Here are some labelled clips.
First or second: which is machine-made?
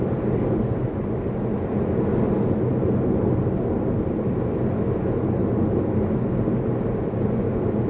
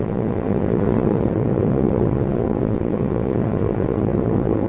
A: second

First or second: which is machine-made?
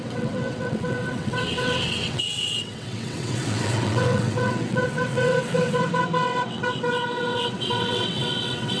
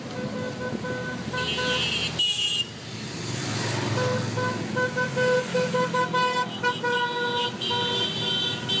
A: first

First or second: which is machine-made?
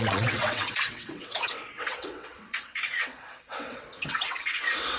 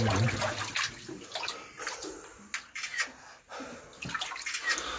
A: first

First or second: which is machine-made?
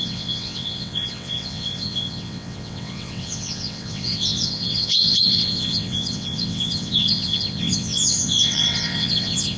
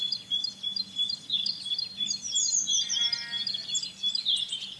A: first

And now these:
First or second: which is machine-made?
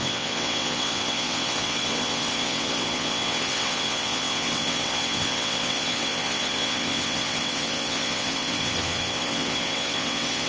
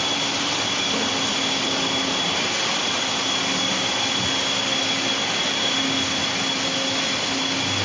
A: first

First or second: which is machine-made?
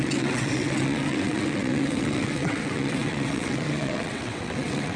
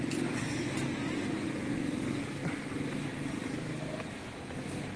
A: first